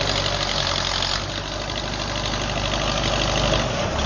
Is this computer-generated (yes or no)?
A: no